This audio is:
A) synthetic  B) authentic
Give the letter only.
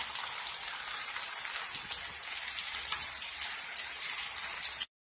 B